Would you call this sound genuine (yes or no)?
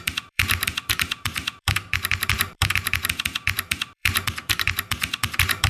no